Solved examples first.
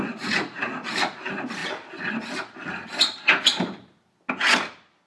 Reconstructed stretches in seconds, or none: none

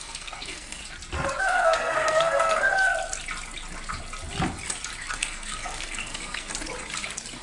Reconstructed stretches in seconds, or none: 0.0-0.8; 1.4-2.9; 5.0-6.5

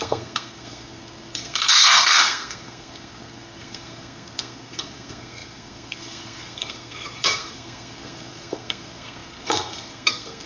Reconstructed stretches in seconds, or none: 0.0-10.5